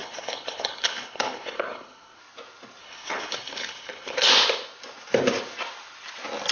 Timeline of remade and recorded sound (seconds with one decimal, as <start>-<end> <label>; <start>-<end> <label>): 0.0-2.2 remade; 2.2-2.8 recorded; 2.8-4.3 remade; 4.3-6.5 recorded

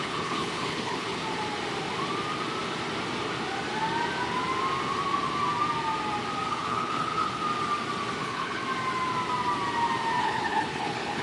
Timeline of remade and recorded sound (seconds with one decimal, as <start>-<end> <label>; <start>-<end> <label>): 0.0-1.2 remade; 1.2-6.5 recorded; 6.5-7.4 remade; 7.4-8.2 recorded; 8.2-8.6 remade; 8.6-10.2 recorded; 10.2-11.2 remade

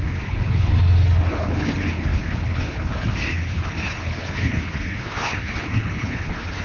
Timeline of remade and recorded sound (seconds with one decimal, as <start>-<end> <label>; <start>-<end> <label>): 0.0-0.7 remade; 0.7-1.3 recorded; 1.3-6.6 remade

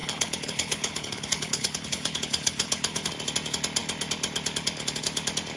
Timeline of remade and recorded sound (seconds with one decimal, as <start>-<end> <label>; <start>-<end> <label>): 0.0-3.1 remade; 3.1-5.6 recorded

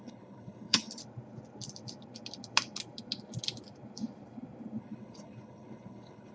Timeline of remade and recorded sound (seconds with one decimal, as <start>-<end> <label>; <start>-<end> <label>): 0.0-1.0 remade; 1.0-4.8 recorded; 4.8-6.3 remade

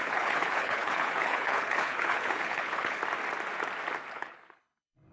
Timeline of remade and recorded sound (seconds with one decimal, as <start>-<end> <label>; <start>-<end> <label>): 0.0-3.0 remade; 3.0-4.1 recorded; 4.1-5.1 remade

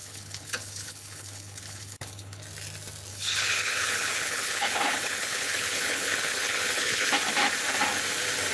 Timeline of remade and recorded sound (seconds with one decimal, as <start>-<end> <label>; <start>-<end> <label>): 0.0-2.4 remade; 2.4-3.1 recorded; 3.1-7.1 remade; 7.1-8.5 recorded